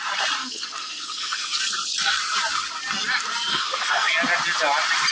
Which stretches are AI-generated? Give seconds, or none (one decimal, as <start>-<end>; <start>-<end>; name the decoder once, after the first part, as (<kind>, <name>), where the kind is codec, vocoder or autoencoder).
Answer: 0.4-1.6 (codec, SNAC); 3.5-4.1